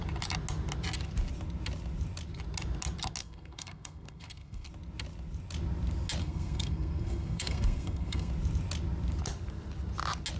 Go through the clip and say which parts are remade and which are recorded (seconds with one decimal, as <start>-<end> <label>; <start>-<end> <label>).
0.0-3.2 recorded; 3.2-4.7 remade; 4.7-6.2 recorded; 6.2-8.3 remade; 8.3-10.4 recorded